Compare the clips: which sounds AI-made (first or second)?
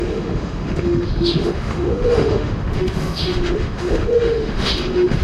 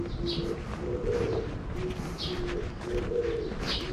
first